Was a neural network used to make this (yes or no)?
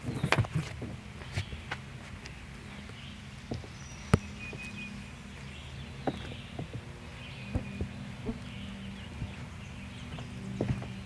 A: no